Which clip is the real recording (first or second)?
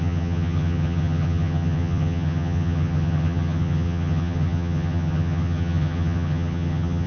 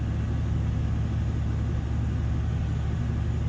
second